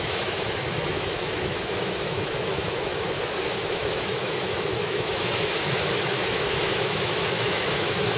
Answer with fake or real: fake